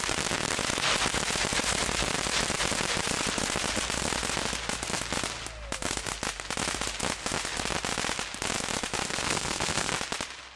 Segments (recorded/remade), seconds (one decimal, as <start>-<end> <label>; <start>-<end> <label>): 0.0-9.1 recorded; 9.1-9.9 remade; 9.9-10.6 recorded